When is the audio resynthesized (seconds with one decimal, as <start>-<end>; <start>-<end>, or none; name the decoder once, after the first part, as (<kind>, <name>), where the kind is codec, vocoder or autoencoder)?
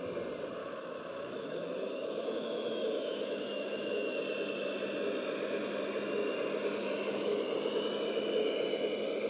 0.6-4.2 (autoencoder, DAC-VAE); 6.8-7.4